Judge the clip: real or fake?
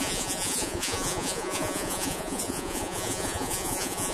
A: fake